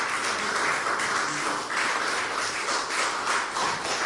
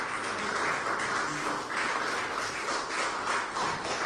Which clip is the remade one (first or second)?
first